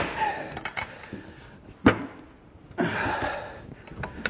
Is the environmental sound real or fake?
real